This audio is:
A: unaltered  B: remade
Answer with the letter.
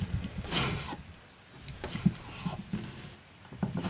A